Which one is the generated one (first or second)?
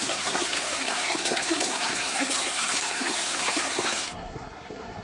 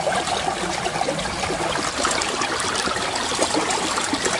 first